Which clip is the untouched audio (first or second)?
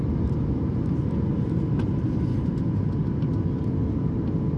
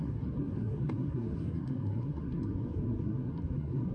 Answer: first